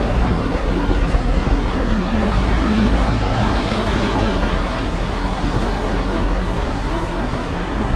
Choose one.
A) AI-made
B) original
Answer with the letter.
A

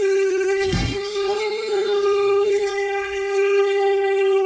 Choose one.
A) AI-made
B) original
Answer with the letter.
A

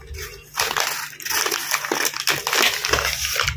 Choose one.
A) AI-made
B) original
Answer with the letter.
B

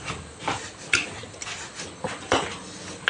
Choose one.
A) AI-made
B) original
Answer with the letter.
B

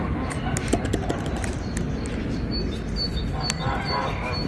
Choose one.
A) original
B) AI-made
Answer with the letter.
A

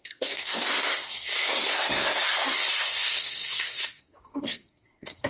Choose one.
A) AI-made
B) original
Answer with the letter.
A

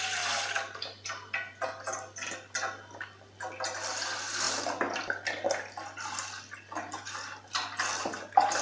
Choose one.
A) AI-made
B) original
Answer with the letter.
B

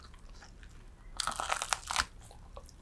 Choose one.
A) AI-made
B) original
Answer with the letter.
B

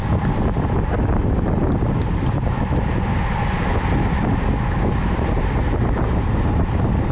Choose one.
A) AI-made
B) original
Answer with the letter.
B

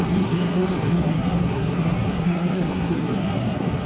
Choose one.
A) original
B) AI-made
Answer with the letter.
B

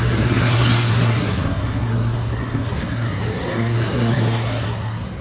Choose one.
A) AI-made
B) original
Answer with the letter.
A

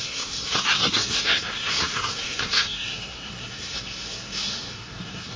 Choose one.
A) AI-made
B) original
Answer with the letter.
A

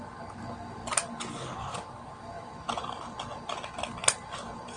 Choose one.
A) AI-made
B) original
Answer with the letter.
B